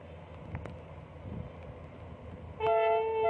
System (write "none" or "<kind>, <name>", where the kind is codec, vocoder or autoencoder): none